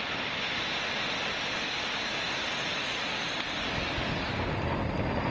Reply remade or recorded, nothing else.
recorded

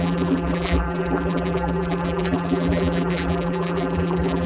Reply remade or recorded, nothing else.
remade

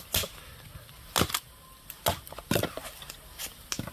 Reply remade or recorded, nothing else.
recorded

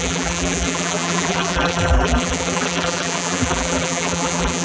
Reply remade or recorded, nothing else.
remade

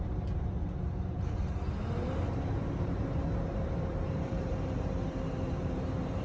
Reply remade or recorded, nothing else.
remade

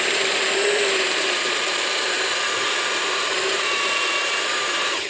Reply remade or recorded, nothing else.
remade